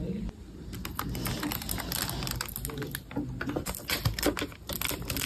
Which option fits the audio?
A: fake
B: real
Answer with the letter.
B